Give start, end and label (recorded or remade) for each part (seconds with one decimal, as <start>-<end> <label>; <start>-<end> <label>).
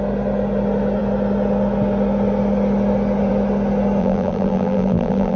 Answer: 0.0-4.0 recorded; 4.0-5.4 remade